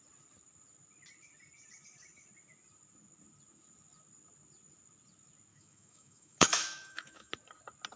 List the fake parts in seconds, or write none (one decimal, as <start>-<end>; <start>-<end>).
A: 5.5-7.3